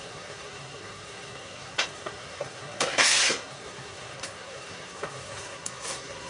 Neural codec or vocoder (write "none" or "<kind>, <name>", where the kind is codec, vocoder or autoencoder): codec, SNAC